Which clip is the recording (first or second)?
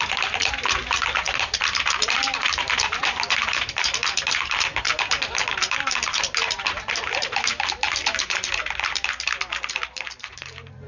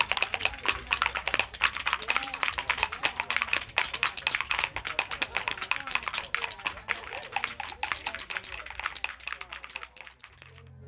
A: second